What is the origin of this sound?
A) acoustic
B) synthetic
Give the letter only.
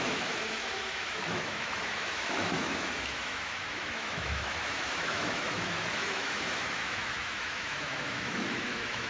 B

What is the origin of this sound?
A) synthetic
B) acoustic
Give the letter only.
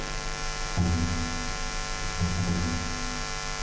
B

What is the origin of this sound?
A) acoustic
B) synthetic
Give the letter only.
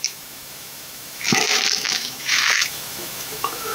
B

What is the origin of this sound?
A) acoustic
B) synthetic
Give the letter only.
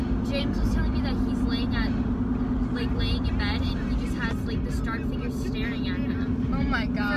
A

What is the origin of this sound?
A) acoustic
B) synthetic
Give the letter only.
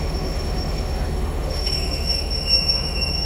B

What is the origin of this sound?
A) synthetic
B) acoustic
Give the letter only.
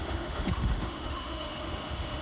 A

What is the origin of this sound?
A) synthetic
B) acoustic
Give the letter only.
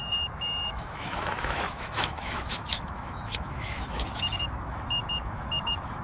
A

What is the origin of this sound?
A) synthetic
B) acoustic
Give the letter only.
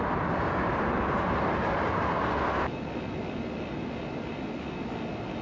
B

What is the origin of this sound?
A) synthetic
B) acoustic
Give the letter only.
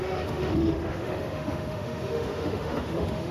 A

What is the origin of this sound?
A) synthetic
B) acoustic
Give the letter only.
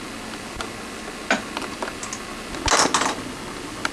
B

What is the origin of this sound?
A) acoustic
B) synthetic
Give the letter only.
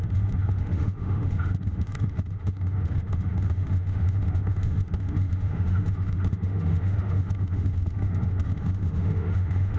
B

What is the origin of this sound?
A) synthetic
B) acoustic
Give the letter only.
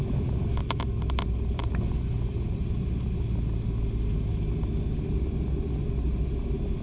B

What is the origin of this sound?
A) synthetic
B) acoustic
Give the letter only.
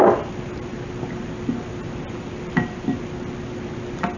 B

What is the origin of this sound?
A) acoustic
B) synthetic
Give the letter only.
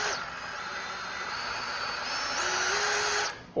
A